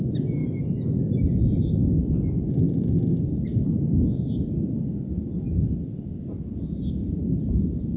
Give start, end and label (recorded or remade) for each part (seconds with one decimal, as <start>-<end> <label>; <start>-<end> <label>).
0.0-2.5 recorded; 2.5-3.2 remade; 3.2-8.0 recorded